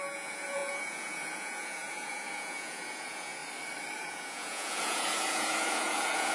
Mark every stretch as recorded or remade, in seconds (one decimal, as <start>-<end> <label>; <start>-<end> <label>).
0.0-3.4 remade; 3.4-4.0 recorded; 4.0-6.3 remade